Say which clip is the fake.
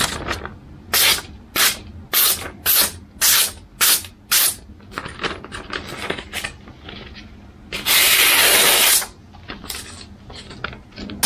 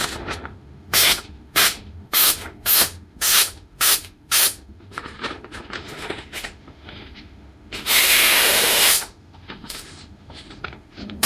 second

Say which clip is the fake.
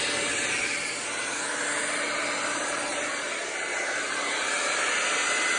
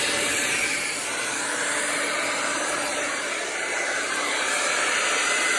second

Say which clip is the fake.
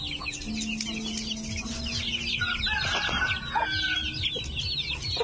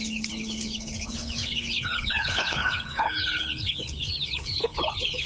second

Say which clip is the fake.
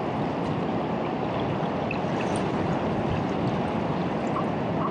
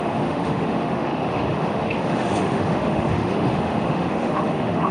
second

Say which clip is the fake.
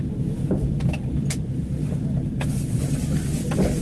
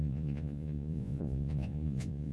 second